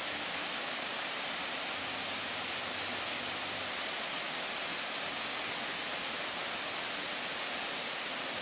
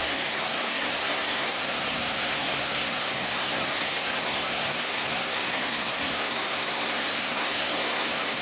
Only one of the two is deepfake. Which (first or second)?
second